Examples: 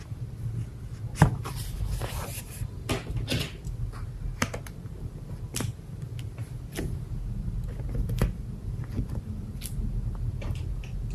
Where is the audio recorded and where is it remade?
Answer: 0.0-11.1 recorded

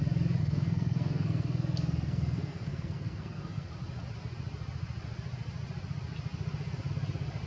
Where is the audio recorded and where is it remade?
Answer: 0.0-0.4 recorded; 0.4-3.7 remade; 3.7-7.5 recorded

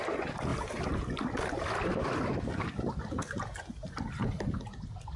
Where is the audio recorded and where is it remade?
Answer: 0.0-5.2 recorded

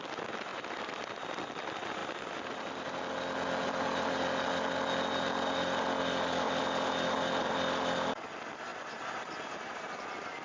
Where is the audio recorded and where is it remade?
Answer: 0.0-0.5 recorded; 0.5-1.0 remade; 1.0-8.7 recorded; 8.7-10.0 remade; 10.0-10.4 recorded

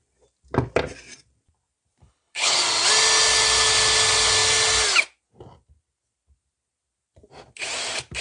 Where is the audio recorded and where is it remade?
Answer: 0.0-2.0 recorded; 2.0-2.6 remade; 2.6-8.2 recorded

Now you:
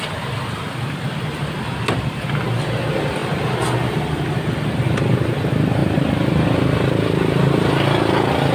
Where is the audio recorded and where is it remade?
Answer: 0.0-5.8 recorded; 5.8-7.7 remade; 7.7-8.5 recorded

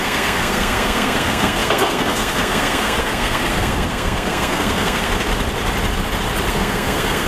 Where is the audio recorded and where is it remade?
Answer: 0.0-5.3 remade; 5.3-6.5 recorded; 6.5-7.3 remade